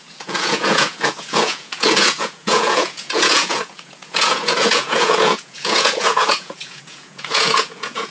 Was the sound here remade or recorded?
remade